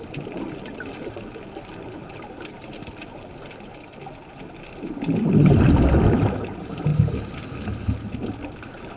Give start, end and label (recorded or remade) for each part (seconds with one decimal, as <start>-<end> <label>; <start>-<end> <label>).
0.0-9.0 recorded